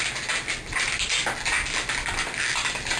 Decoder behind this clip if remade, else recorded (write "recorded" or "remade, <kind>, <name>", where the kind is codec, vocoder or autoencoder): recorded